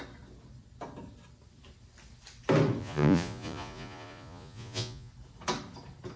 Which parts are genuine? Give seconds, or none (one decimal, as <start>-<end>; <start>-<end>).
0.0-2.8; 5.1-6.2